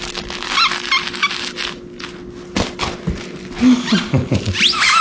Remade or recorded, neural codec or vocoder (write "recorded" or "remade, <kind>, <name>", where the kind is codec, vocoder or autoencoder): recorded